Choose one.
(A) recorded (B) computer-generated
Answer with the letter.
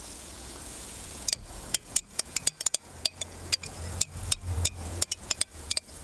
B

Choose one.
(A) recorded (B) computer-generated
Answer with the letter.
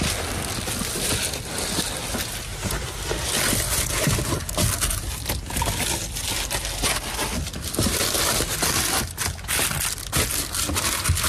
A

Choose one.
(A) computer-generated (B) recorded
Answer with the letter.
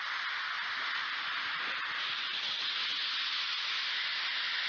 B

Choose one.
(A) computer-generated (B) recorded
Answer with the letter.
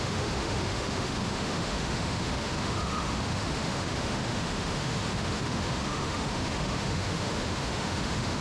A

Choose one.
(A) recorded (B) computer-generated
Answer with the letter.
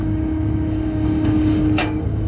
B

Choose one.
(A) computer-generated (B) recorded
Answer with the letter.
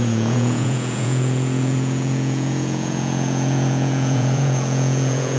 A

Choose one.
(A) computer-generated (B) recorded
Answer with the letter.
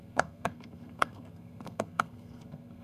A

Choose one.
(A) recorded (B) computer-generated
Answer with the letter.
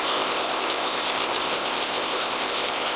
B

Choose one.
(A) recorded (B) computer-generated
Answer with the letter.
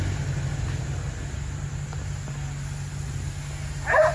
A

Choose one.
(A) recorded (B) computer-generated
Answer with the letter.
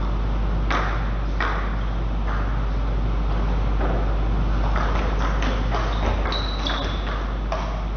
A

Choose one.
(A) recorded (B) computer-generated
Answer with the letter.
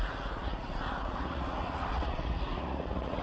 B